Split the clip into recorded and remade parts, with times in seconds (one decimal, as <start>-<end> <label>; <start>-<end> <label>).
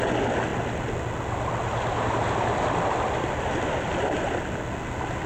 0.0-5.3 recorded